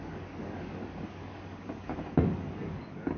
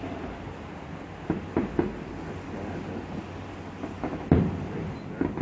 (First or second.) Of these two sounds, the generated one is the first